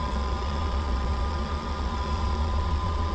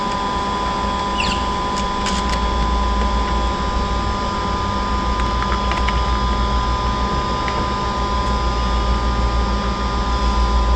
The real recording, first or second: second